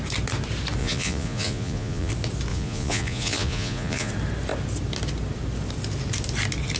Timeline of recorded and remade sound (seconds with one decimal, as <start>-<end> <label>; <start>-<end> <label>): 0.0-0.8 recorded; 0.8-2.1 remade; 2.1-2.5 recorded; 2.5-4.1 remade; 4.1-6.8 recorded